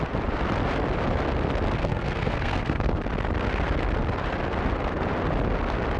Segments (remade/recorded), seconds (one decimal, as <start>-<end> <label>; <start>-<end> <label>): 0.0-1.8 recorded; 1.8-3.0 remade; 3.0-6.0 recorded